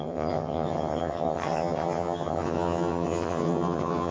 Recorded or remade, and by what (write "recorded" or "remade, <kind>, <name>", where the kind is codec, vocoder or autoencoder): remade, vocoder, HiFi-GAN